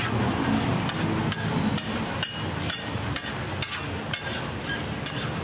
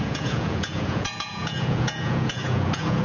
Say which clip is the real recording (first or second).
first